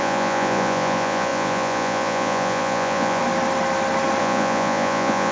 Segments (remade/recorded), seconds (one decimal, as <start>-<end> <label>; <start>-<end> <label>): 0.0-3.2 remade; 3.2-4.2 recorded; 4.2-5.3 remade